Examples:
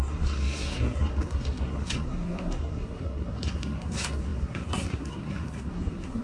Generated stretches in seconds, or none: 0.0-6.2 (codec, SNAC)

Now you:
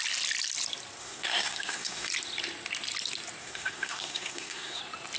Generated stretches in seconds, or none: 1.0-2.1 (codec, SNAC); 3.4-4.8

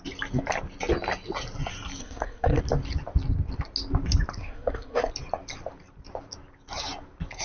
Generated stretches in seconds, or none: 2.0-2.6 (codec, SNAC); 4.4-5.1

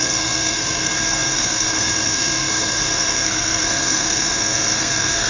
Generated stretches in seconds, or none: 0.0-5.3 (codec, SNAC)

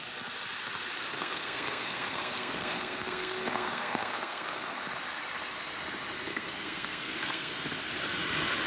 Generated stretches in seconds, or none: 1.1-4.8 (codec, SNAC); 6.3-7.5

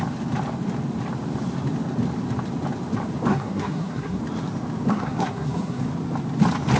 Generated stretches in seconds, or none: 3.3-4.2 (codec, SNAC); 4.9-5.8

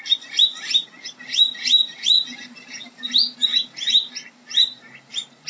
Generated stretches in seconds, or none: none

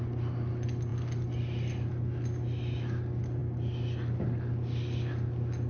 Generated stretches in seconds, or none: none